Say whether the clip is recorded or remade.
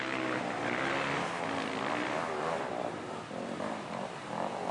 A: recorded